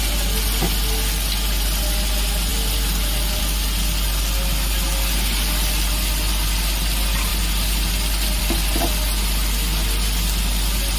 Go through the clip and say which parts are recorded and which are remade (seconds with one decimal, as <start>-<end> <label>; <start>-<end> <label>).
0.0-11.0 recorded